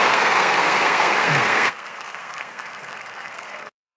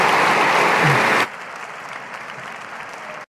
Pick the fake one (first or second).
first